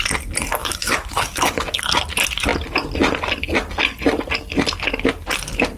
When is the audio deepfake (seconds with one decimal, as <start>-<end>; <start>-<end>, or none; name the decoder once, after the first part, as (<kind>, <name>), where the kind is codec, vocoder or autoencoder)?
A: 0.6-1.8 (autoencoder, DAC-VAE)

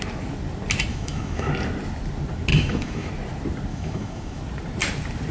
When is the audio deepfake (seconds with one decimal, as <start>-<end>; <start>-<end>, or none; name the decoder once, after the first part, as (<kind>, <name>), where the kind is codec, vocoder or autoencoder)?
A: 0.9-1.5 (autoencoder, DAC-VAE); 2.5-3.1; 3.7-4.4